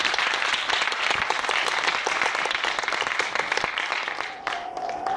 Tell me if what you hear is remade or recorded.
recorded